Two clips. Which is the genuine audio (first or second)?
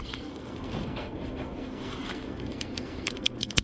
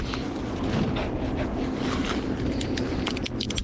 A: second